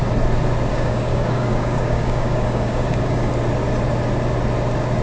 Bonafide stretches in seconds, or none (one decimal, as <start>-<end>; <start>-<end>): 0.0-0.7; 3.3-5.0